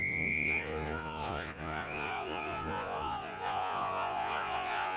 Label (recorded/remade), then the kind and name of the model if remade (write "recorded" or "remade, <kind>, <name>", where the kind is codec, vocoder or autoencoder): remade, vocoder, Vocos